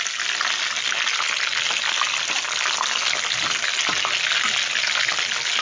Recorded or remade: recorded